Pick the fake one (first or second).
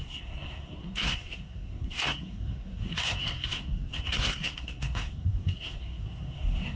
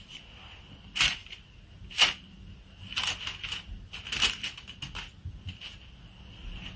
first